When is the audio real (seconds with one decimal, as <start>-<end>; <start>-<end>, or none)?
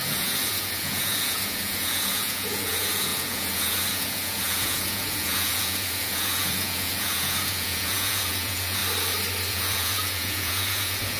8.8-9.5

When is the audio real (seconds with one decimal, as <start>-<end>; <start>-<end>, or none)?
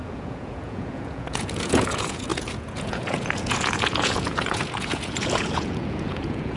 none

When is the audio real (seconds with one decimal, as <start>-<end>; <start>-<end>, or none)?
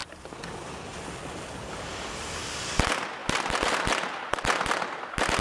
0.0-3.2; 4.2-5.4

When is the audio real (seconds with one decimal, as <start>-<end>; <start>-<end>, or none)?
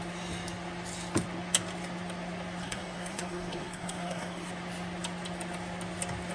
0.0-2.6; 4.5-6.3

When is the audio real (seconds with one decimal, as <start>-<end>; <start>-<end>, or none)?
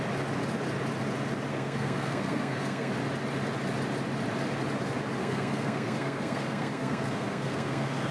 0.0-1.5; 2.9-5.2